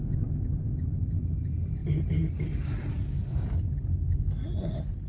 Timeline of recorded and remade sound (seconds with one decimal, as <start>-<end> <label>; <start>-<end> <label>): 0.0-5.1 recorded